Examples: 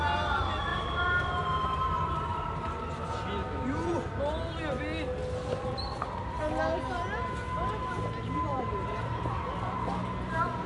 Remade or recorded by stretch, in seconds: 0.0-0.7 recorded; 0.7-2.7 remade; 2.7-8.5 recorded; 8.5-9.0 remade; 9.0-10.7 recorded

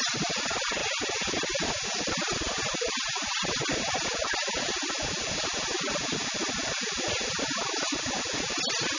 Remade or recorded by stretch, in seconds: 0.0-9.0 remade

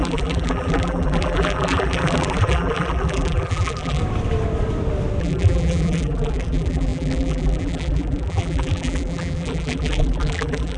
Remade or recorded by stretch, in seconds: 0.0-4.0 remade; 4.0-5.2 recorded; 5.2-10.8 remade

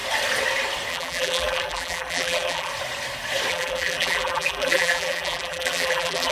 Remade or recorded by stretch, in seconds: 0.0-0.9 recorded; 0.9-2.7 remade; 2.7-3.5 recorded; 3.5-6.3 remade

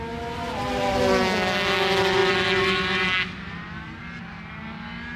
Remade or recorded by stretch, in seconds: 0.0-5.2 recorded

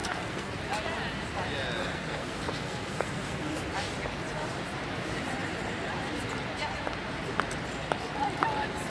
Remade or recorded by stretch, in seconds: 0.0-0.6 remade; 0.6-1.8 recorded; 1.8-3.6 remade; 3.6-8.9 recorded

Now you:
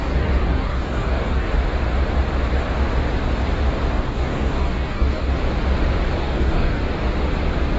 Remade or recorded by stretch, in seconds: 0.0-1.5 remade; 1.5-3.9 recorded; 3.9-5.3 remade; 5.3-6.2 recorded; 6.2-6.8 remade; 6.8-7.8 recorded

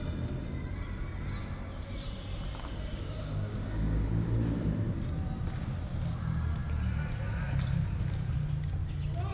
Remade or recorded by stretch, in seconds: 0.0-2.9 recorded; 2.9-4.1 remade; 4.1-9.3 recorded